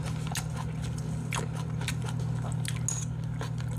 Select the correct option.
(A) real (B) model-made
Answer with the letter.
A